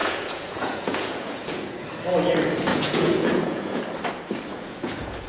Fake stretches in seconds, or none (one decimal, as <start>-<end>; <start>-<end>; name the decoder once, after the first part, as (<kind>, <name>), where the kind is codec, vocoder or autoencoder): 0.0-1.8 (vocoder, Vocos); 2.7-3.8; 4.5-5.3